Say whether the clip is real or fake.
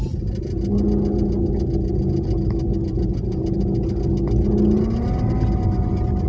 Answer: real